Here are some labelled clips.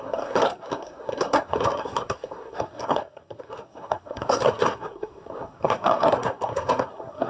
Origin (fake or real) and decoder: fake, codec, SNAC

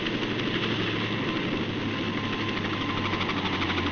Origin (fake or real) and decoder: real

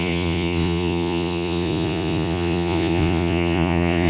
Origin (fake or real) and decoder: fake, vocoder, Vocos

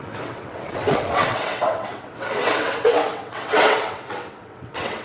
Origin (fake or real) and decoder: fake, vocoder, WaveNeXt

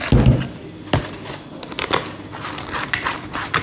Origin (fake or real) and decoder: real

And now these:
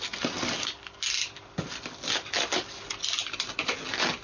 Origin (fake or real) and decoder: real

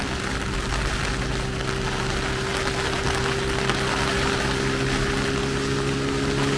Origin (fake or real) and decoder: real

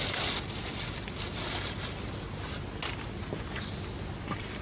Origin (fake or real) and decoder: real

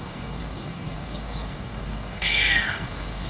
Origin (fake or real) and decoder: fake, codec, SNAC